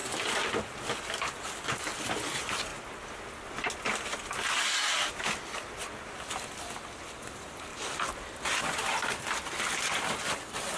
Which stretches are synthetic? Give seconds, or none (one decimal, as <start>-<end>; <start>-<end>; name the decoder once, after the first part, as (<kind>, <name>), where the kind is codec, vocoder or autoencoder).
none